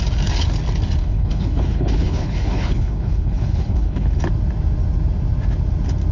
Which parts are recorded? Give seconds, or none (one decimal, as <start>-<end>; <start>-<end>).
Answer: 0.0-1.0; 4.2-6.1